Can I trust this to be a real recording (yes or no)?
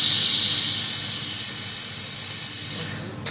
yes